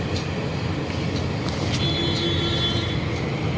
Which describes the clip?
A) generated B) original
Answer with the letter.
B